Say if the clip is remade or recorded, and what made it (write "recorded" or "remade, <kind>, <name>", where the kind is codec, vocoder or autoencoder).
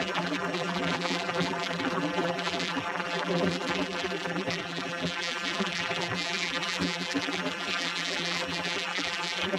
remade, vocoder, BigVGAN v2